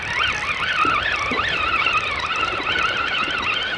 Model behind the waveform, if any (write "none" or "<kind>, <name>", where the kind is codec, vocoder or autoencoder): vocoder, BigVGAN v2